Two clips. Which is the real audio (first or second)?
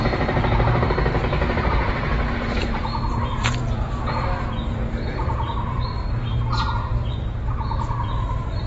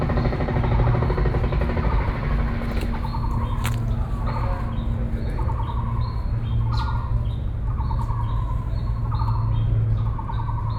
second